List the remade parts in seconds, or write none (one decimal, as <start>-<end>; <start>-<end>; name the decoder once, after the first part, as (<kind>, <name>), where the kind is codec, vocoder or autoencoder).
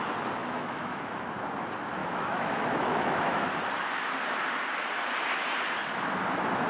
0.4-1.2 (autoencoder, DAC-VAE); 2.0-3.5